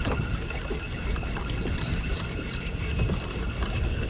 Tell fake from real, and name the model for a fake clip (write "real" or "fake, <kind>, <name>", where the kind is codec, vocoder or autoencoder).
real